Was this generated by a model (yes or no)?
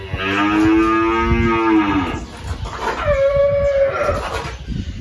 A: no